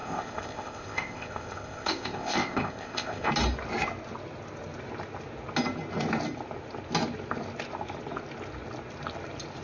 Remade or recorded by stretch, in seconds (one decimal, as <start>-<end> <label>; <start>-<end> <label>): 0.0-3.3 remade; 3.3-9.6 recorded